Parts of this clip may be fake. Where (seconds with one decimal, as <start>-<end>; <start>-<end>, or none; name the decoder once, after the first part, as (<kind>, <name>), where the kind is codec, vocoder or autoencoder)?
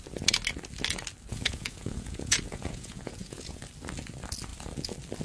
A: 1.3-3.6 (vocoder, Vocos)